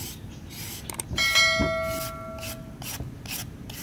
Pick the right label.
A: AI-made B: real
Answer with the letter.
B